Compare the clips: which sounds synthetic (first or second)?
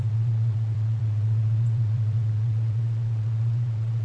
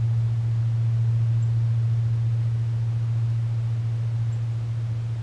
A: first